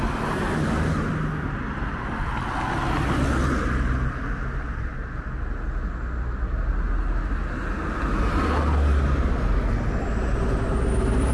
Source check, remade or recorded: recorded